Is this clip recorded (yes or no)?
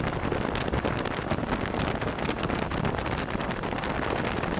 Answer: yes